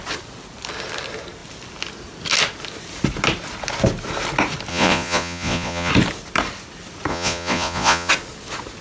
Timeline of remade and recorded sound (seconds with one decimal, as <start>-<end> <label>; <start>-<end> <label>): 0.0-4.7 recorded; 4.7-5.9 remade; 5.9-7.1 recorded; 7.1-8.1 remade; 8.1-8.8 recorded